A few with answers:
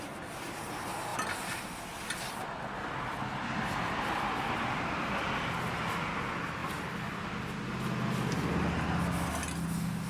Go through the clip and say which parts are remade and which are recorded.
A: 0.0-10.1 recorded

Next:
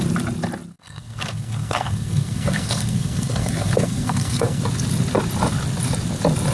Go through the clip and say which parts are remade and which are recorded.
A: 0.0-0.7 recorded; 0.7-4.6 remade; 4.6-6.5 recorded

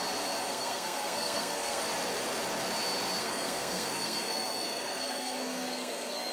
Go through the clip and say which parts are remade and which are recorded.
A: 0.0-0.5 recorded; 0.5-1.8 remade; 1.8-3.2 recorded; 3.2-6.3 remade

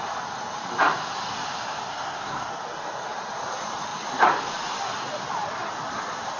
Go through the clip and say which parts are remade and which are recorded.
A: 0.0-1.9 recorded; 1.9-2.5 remade; 2.5-6.4 recorded